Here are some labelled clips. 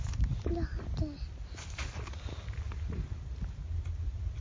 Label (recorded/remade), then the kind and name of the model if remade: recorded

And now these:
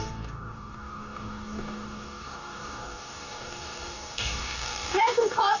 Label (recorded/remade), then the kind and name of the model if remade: remade, codec, DAC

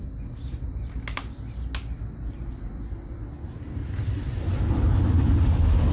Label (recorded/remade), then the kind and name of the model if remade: recorded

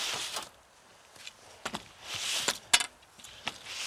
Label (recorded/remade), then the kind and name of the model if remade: recorded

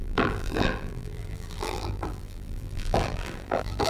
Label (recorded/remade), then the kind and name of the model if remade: remade, vocoder, BigVGAN v2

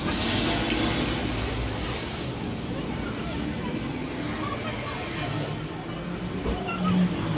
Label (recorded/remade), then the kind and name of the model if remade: recorded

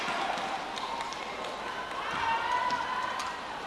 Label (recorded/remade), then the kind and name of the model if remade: recorded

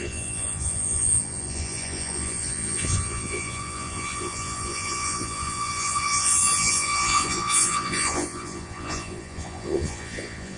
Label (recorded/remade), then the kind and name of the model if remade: remade, vocoder, Vocos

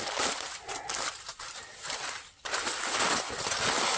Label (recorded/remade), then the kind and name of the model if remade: recorded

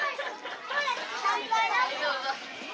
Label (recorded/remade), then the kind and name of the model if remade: recorded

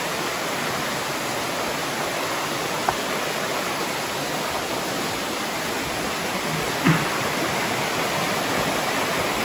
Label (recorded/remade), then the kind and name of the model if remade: recorded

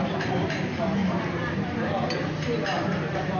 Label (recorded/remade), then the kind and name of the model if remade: remade, vocoder, BigVGAN v2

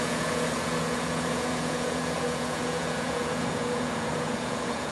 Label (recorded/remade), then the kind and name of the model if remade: remade, vocoder, Vocos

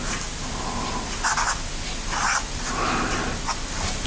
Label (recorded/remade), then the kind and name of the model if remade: recorded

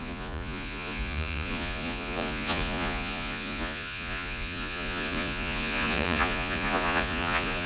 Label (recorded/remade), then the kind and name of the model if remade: remade, vocoder, Vocos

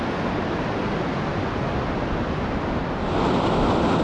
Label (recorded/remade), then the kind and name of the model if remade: recorded